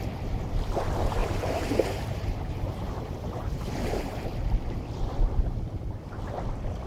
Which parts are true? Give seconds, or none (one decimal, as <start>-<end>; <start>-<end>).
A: 0.0-1.2; 4.2-6.9

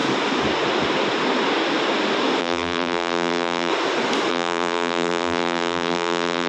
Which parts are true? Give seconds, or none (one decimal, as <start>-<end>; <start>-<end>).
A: 0.0-2.4; 3.7-4.3

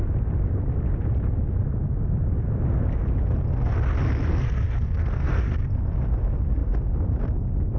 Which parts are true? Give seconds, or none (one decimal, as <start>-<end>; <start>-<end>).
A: 0.0-4.3; 5.7-7.8

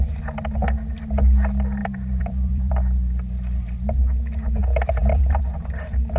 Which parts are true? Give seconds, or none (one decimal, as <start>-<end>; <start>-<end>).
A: 0.0-1.8; 3.6-5.0

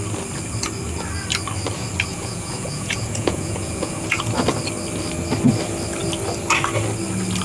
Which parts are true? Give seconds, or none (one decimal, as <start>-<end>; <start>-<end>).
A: 0.0-2.1; 4.2-7.4

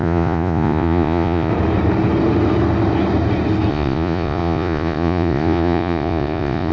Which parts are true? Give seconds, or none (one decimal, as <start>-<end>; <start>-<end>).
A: 1.5-3.7

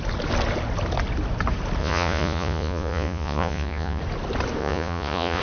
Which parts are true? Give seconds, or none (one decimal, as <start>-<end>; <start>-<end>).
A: 0.0-1.8; 4.0-4.6